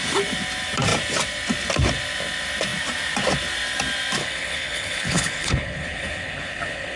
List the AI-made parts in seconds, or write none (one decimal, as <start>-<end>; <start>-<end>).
4.2-7.0